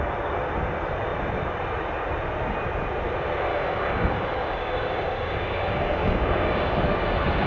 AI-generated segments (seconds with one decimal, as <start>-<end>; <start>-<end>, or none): 3.5-6.8